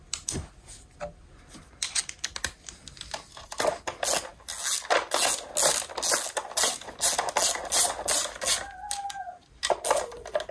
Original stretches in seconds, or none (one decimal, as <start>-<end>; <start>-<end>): 0.0-10.5